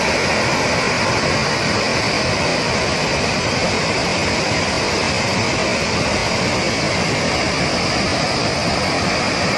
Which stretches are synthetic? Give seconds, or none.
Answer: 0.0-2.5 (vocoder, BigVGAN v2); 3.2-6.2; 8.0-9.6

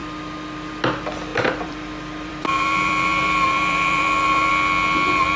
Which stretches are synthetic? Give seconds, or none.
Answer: 1.3-4.5 (vocoder, BigVGAN v2)

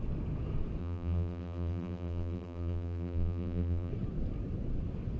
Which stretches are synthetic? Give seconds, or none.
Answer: 0.8-3.9 (vocoder, BigVGAN v2)

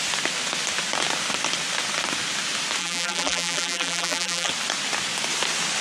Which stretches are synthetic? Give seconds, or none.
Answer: 2.8-4.5 (vocoder, BigVGAN v2)

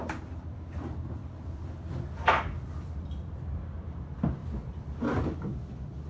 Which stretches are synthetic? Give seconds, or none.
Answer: none

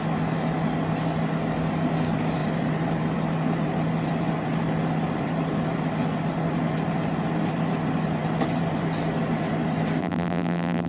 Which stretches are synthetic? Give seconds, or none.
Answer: 10.0-10.9 (vocoder, BigVGAN v2)

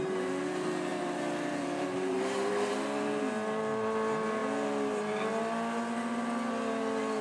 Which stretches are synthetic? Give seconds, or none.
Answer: 0.9-2.7 (vocoder, BigVGAN v2)